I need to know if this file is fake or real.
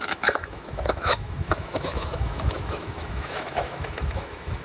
fake